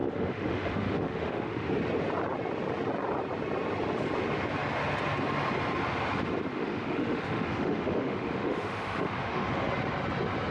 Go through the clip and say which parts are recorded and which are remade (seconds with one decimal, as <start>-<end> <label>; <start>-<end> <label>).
0.0-1.7 remade; 1.7-6.5 recorded; 6.5-9.7 remade; 9.7-10.5 recorded